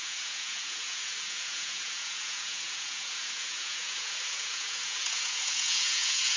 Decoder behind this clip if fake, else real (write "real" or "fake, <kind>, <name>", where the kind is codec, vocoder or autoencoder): fake, vocoder, Vocos